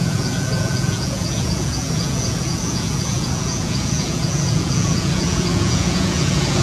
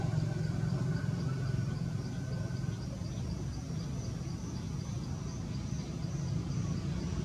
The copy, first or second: first